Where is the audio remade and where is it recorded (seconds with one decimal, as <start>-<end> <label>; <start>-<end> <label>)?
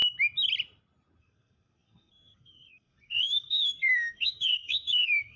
0.0-1.2 recorded; 1.2-5.4 remade